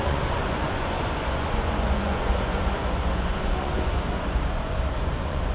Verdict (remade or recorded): remade